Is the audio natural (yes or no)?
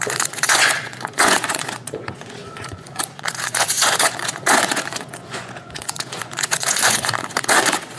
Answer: no